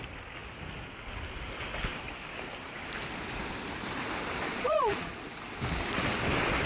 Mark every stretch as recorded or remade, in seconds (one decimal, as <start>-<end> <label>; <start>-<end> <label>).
0.0-4.5 recorded; 4.5-5.4 remade; 5.4-6.7 recorded